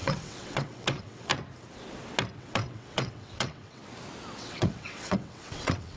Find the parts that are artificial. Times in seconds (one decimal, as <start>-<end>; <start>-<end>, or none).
0.0-1.3; 2.4-3.8; 4.4-6.0